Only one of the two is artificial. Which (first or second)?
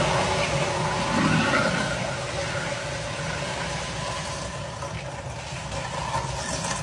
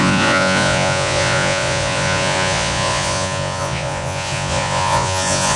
second